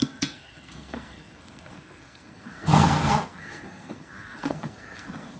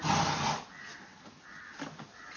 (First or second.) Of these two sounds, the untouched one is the second